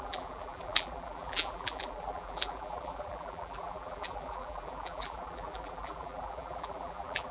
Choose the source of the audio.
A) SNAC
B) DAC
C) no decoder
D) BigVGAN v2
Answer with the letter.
D